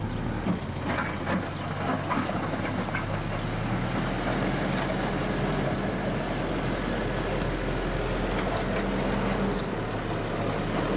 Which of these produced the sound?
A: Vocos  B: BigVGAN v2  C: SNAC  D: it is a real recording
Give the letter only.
D